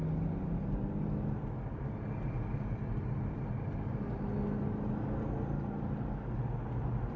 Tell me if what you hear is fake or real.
real